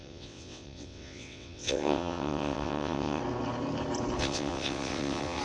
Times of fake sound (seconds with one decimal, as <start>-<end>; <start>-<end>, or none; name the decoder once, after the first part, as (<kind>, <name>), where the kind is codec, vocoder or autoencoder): 0.0-3.2 (vocoder, WaveNeXt); 4.2-5.4

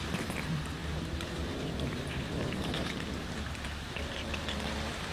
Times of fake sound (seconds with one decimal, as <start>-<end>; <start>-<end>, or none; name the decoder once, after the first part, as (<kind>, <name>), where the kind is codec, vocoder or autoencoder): 0.8-3.9 (vocoder, BigVGAN v2)

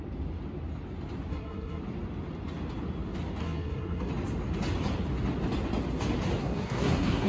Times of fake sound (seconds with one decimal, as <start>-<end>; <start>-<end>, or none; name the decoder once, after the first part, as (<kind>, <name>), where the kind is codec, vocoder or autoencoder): 1.3-1.8 (codec, SNAC); 3.4-4.1; 6.4-7.3

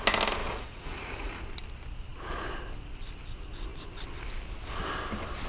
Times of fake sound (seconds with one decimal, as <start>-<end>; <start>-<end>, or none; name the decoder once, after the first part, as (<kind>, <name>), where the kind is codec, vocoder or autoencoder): 0.4-1.5 (vocoder, Vocos)

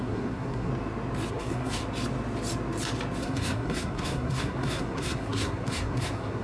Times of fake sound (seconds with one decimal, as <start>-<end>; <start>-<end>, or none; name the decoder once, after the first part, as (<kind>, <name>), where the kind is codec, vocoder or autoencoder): 0.0-0.7 (codec, SNAC); 1.3-1.8; 3.2-6.4

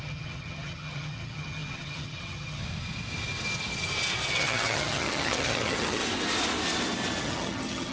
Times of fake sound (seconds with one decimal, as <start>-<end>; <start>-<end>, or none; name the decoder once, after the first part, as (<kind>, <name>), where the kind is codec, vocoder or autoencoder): 0.0-2.6 (vocoder, HiFi-GAN); 4.3-6.0; 7.2-7.9

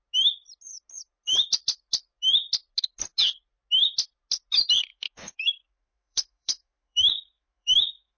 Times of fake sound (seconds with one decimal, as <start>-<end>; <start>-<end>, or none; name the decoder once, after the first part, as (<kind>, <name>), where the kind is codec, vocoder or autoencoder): 4.9-8.2 (autoencoder, DAC-VAE)

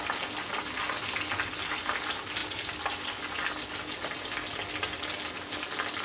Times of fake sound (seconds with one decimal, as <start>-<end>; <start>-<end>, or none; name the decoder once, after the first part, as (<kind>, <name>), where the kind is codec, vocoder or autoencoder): none